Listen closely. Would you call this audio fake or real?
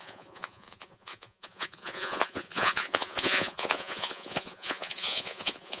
fake